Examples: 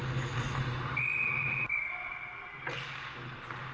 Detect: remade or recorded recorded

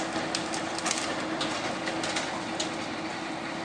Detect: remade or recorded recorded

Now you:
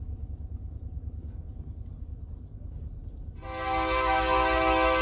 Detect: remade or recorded recorded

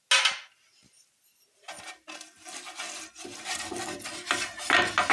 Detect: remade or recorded recorded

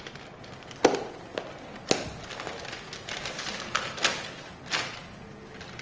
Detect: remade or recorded recorded